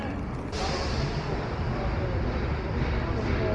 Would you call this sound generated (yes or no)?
no